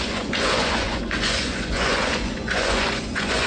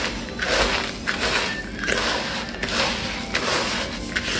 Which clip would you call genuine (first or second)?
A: second